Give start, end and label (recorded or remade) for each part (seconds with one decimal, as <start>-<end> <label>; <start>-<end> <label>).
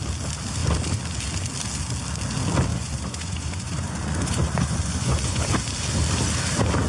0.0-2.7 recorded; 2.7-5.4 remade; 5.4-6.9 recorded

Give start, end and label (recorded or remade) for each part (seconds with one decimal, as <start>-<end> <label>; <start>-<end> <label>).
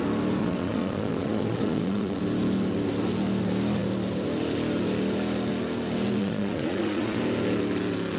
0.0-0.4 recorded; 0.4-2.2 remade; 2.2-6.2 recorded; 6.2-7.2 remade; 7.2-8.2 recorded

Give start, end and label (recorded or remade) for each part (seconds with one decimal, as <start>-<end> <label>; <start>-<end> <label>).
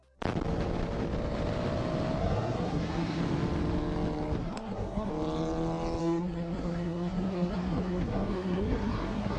0.0-2.2 recorded; 2.2-3.2 remade; 3.2-4.4 recorded; 4.4-5.1 remade; 5.1-6.0 recorded; 6.0-9.4 remade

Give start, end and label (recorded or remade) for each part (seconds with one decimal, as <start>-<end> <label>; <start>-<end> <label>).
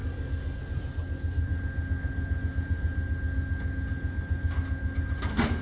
0.0-0.6 remade; 0.6-5.6 recorded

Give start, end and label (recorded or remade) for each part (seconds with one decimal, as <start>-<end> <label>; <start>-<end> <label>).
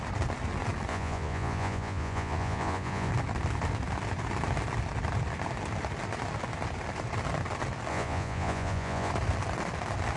0.0-0.9 recorded; 0.9-3.1 remade; 3.1-7.9 recorded; 7.9-9.1 remade; 9.1-10.2 recorded